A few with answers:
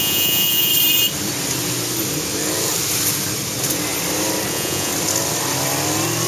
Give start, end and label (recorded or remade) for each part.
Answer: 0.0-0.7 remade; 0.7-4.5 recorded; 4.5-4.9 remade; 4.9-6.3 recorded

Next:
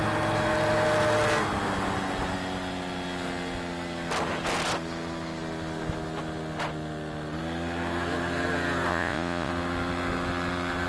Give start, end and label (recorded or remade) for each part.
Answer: 0.0-8.9 recorded; 8.9-9.5 remade; 9.5-10.9 recorded

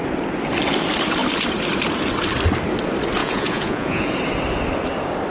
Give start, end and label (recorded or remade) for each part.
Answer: 0.0-3.2 recorded; 3.2-4.1 remade; 4.1-5.3 recorded

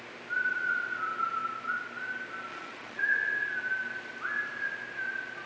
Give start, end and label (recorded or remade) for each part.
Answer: 0.0-2.5 recorded; 2.5-3.0 remade; 3.0-5.5 recorded